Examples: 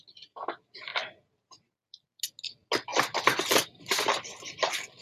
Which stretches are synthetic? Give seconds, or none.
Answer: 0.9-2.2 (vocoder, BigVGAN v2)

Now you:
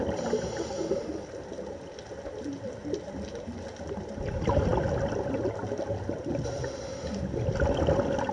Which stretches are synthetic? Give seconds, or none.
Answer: none

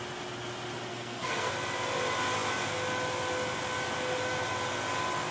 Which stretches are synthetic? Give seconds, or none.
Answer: 0.9-1.5 (codec, SNAC)

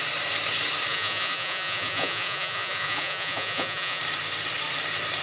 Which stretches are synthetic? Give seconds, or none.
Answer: 0.9-4.0 (vocoder, Vocos)

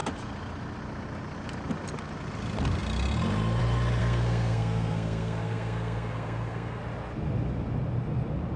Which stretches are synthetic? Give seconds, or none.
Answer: 4.0-6.8 (codec, SNAC)

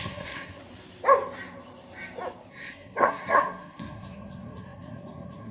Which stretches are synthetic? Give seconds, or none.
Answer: 0.0-0.6 (codec, SNAC); 2.5-5.5